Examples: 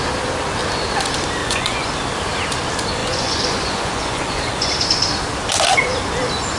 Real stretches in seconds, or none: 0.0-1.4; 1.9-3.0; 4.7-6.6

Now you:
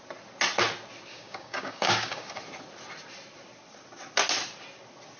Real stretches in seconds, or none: 0.0-1.1; 2.4-5.2